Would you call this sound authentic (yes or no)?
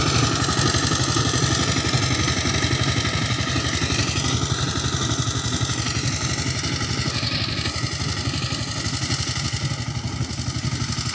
yes